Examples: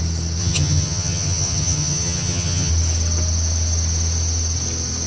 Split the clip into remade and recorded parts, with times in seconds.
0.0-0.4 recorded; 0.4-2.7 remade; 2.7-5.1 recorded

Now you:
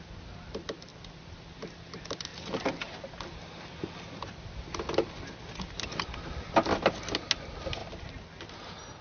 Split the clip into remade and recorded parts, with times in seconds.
0.0-0.9 recorded; 0.9-1.7 remade; 1.7-2.3 recorded; 2.3-6.9 remade; 6.9-9.0 recorded

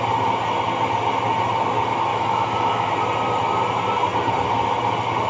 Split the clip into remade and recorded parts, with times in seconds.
0.0-2.1 recorded; 2.1-2.9 remade; 2.9-5.3 recorded

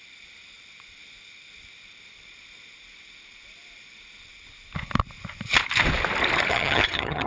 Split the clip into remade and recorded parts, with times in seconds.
0.0-6.5 recorded; 6.5-7.3 remade

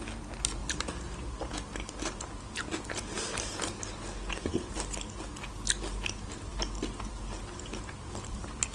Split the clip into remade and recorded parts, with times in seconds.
0.0-8.7 recorded

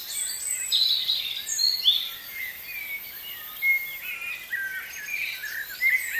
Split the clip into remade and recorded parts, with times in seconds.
0.0-1.0 recorded; 1.0-2.9 remade; 2.9-6.2 recorded

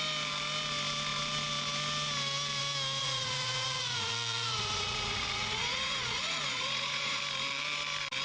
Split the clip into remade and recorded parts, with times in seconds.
0.0-3.0 recorded; 3.0-7.2 remade; 7.2-8.2 recorded